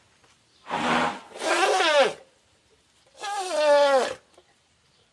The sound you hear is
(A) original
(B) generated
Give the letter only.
A